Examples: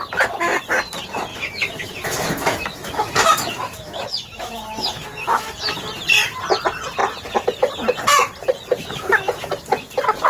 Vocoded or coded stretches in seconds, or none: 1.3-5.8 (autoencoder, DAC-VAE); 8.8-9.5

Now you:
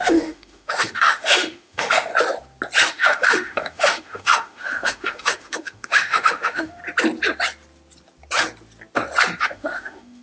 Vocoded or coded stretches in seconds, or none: 0.0-2.1 (autoencoder, DAC-VAE); 2.9-6.8; 9.4-10.2

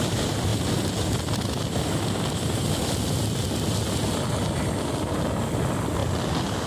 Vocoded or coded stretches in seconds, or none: none

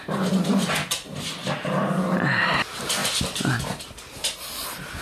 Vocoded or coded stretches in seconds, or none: none

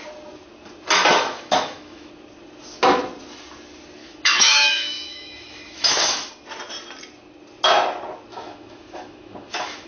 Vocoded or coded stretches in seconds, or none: 1.1-2.1 (autoencoder, DAC-VAE); 4.0-6.3; 8.3-9.9

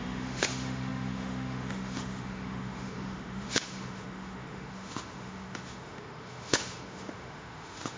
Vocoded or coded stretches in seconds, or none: 0.0-8.0 (autoencoder, DAC-VAE)